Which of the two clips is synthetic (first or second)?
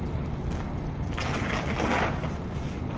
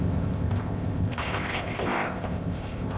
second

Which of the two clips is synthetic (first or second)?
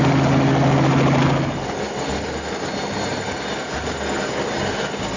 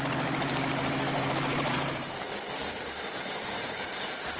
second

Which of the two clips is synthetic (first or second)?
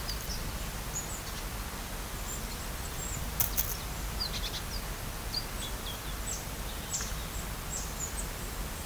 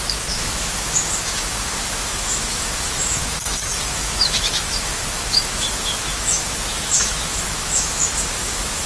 second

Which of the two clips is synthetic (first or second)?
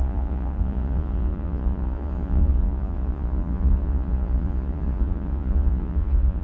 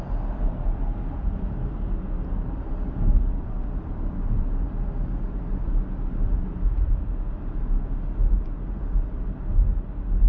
first